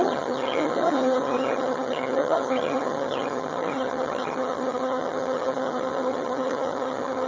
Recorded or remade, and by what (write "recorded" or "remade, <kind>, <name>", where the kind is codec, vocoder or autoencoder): remade, vocoder, HiFi-GAN